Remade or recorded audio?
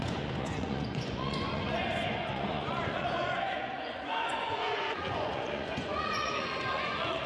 remade